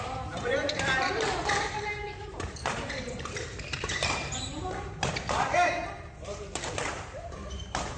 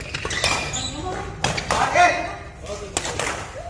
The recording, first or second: second